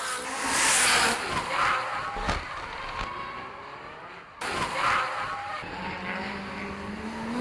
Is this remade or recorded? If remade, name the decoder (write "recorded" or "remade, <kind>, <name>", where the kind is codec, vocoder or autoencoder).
recorded